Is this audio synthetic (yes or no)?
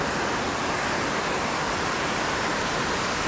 yes